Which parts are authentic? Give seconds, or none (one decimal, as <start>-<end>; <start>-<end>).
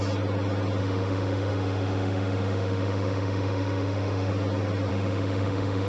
0.0-0.8; 4.3-4.9